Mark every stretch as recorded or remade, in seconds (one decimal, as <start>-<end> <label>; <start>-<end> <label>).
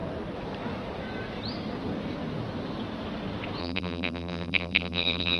0.0-3.6 recorded; 3.6-5.4 remade